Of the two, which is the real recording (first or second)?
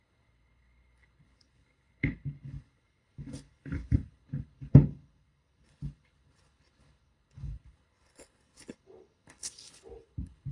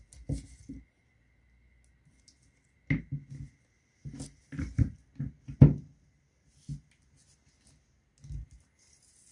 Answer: second